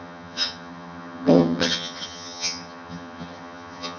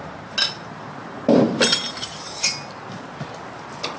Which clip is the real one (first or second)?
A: second